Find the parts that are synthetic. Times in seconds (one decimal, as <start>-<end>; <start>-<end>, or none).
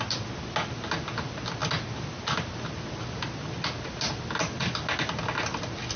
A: none